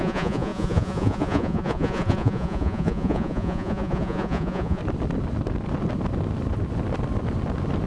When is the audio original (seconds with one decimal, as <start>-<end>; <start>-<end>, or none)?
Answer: 4.8-7.9